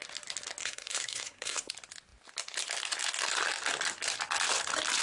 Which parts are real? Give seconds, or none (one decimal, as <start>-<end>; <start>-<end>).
0.0-0.6; 1.7-5.0